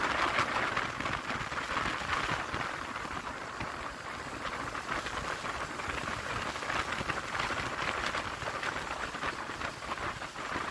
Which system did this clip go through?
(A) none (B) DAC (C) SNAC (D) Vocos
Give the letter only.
A